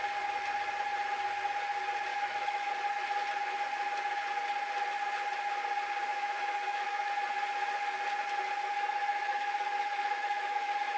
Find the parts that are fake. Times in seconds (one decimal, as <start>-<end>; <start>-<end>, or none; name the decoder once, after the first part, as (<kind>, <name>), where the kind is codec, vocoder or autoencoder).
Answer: 2.1-2.7 (autoencoder, DAC-VAE); 6.1-7.1; 9.1-11.0